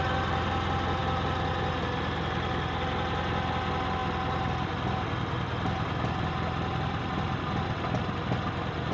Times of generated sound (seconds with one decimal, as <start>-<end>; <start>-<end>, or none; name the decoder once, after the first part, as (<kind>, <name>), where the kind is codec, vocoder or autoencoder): none